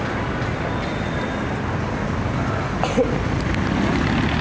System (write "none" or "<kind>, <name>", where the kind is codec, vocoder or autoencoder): none